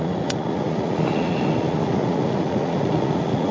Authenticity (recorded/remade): remade